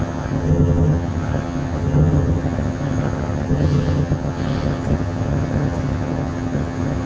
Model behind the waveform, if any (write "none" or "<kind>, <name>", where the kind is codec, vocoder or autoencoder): vocoder, HiFi-GAN